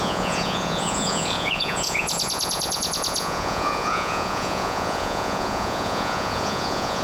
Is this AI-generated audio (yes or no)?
yes